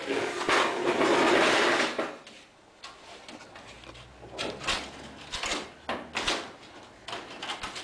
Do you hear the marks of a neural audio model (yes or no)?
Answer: no